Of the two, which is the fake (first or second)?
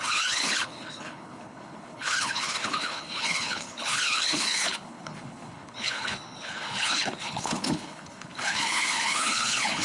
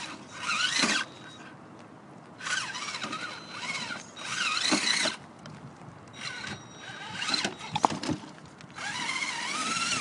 first